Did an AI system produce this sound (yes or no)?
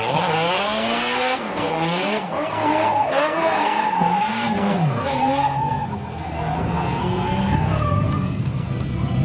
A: yes